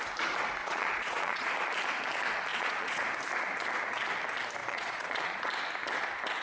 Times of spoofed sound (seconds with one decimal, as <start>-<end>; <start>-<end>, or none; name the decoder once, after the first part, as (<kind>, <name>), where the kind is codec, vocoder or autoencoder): 0.6-1.5 (vocoder, Vocos); 2.5-3.0; 4.6-5.4